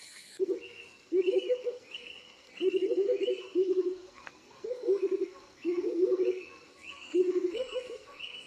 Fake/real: fake